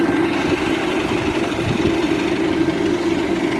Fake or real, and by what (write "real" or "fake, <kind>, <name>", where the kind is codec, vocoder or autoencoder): real